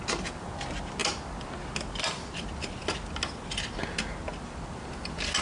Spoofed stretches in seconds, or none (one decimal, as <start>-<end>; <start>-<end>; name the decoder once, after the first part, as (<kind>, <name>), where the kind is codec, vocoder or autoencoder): none